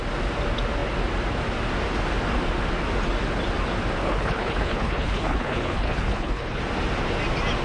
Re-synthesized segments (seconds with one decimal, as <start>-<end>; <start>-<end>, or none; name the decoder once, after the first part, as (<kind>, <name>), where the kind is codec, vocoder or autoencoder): 4.0-6.6 (codec, HILCodec)